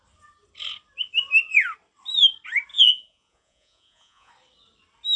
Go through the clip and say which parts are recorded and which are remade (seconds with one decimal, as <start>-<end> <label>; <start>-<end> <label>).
0.0-2.7 recorded; 2.7-4.3 remade; 4.3-5.2 recorded